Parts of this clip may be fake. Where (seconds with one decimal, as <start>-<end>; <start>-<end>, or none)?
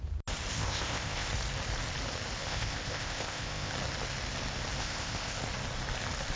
0.5-1.3; 2.4-3.7; 4.8-5.4